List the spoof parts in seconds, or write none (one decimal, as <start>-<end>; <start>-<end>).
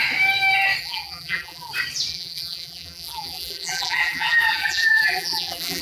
0.8-1.7; 2.1-5.8